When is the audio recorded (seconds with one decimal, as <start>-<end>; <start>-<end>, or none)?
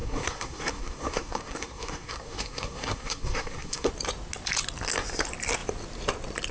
3.9-6.5